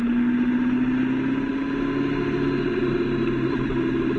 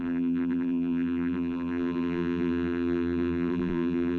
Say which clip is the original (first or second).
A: first